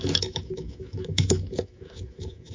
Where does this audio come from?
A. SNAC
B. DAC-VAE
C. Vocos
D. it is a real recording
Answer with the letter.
B